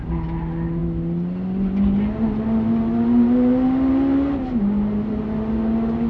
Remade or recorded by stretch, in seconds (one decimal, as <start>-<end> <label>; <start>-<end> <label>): 0.0-6.1 recorded